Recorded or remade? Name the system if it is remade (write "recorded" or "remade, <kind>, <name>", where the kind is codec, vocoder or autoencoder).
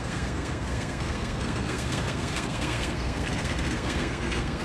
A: remade, codec, SNAC